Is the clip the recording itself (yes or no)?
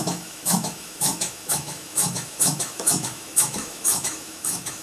no